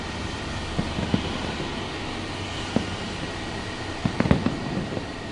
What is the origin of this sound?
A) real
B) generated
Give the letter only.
A